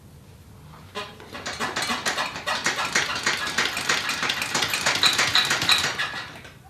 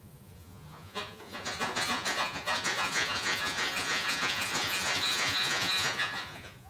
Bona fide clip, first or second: first